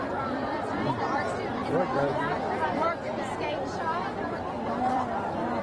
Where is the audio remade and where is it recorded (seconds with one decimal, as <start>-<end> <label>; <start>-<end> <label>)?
0.0-5.6 remade